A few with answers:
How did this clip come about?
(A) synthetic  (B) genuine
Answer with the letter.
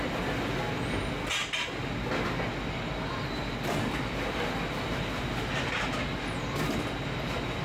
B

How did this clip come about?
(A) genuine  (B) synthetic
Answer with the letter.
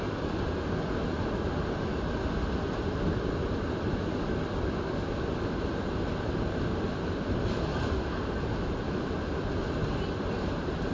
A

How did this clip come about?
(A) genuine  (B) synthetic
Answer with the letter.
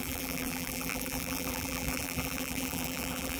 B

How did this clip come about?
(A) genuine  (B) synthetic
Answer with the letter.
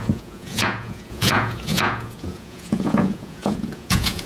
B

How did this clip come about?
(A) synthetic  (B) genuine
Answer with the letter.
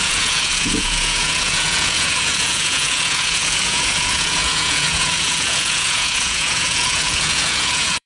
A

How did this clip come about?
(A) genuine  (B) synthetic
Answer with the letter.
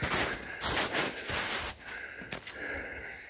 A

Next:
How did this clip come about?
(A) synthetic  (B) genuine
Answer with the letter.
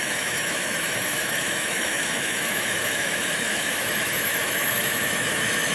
A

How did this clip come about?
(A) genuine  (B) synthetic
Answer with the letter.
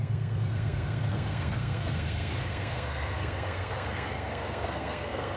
B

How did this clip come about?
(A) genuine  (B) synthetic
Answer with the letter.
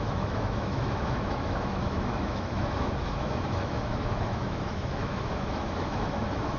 B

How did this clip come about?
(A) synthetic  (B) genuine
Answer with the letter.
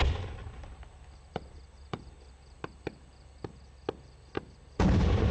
B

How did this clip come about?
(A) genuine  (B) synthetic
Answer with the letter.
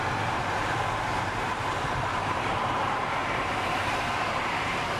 B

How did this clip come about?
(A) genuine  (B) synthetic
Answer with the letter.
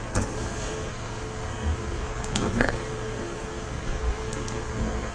B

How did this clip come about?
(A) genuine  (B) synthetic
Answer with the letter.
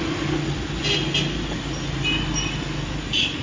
A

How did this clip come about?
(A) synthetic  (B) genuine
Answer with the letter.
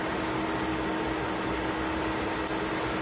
B